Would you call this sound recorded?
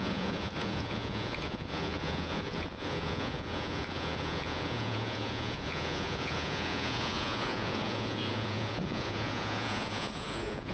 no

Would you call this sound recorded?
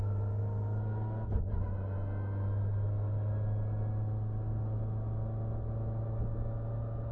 yes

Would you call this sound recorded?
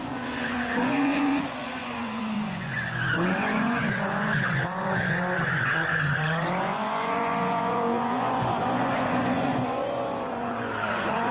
no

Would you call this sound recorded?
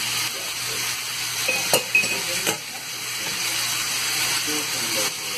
yes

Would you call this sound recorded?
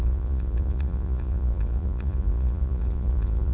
no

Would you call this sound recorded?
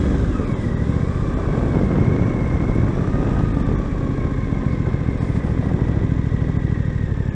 yes